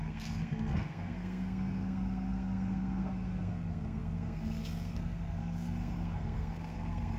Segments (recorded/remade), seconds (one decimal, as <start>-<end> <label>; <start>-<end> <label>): 0.0-7.2 remade